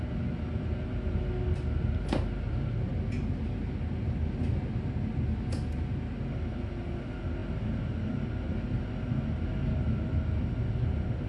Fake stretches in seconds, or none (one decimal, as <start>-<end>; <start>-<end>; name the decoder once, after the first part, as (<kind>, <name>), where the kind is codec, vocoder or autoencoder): none